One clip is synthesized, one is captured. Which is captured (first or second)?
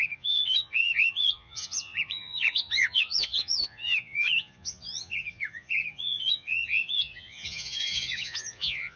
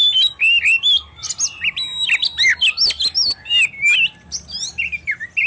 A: second